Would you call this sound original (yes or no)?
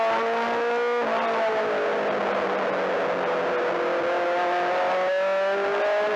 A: yes